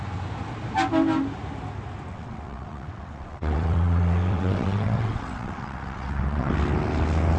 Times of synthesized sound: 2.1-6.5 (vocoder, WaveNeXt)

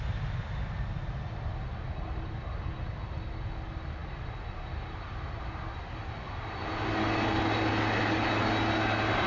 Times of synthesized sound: 4.0-6.0 (vocoder, BigVGAN v2)